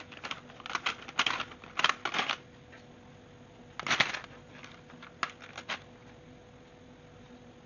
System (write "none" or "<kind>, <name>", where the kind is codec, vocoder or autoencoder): none